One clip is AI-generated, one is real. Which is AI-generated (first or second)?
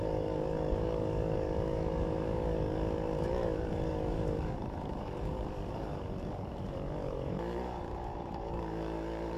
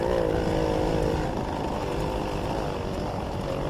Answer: first